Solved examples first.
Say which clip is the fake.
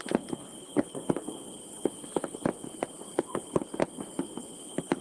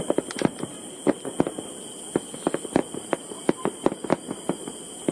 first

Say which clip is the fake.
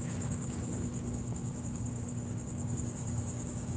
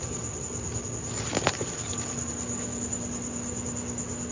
first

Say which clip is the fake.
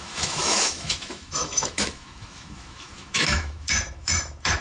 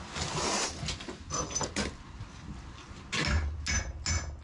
first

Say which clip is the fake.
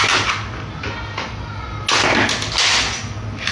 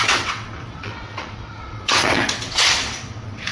second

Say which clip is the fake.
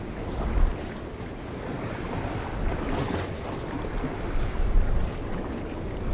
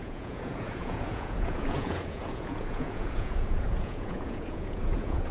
second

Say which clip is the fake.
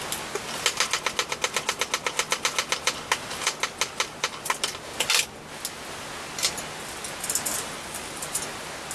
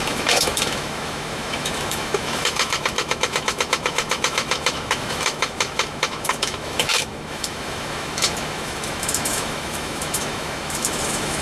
second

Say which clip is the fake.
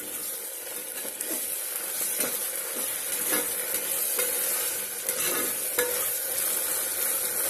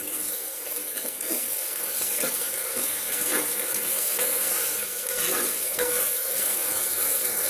second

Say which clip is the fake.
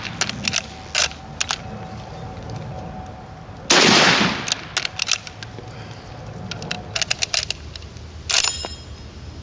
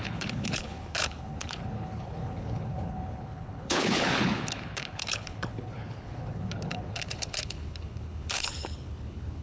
second